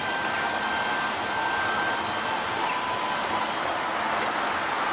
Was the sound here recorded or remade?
recorded